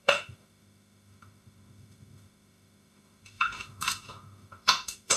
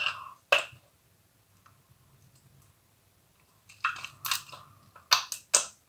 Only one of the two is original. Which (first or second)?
second